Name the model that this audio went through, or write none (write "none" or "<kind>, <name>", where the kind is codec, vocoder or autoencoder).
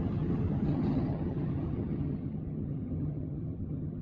vocoder, HiFi-GAN